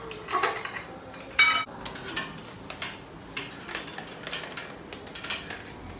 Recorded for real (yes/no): yes